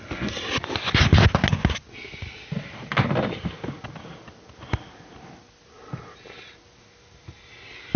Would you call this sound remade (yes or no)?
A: no